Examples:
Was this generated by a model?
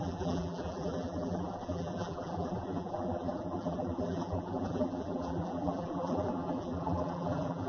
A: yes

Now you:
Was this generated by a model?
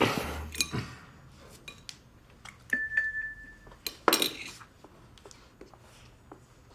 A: no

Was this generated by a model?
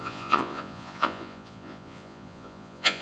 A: yes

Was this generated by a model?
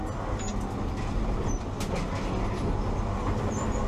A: no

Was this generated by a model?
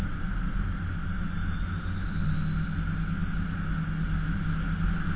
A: no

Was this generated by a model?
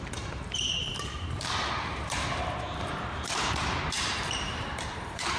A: yes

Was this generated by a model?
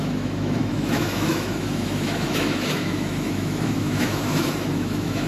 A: yes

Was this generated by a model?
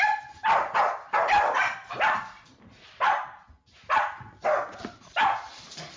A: no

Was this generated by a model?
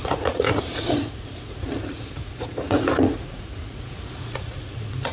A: yes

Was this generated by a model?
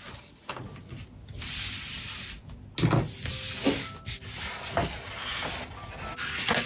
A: no